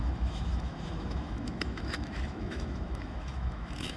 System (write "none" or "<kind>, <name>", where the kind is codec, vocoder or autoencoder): autoencoder, DAC-VAE